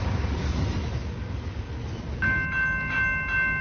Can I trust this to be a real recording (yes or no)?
yes